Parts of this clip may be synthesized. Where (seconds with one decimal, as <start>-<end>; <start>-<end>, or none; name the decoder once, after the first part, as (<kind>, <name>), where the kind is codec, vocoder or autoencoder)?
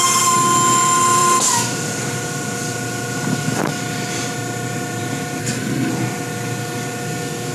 5.4-5.9 (codec, SNAC)